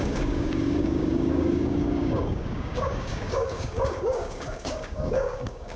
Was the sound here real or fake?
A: fake